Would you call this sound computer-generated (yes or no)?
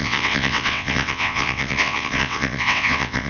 yes